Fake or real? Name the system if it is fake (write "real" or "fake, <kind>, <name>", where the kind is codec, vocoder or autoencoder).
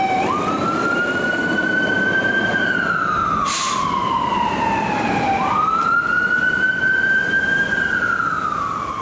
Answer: fake, vocoder, BigVGAN v2